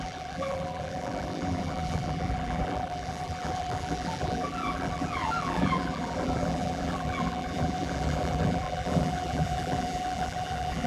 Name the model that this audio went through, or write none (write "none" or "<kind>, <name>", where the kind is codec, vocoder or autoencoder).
vocoder, BigVGAN v2